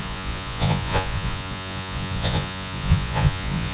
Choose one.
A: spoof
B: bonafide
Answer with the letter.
A